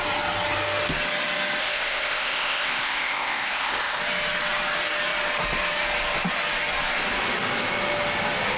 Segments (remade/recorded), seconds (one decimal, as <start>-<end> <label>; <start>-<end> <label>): 0.0-1.6 recorded; 1.6-4.0 remade; 4.0-8.6 recorded